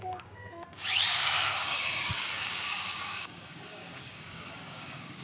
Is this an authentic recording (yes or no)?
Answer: no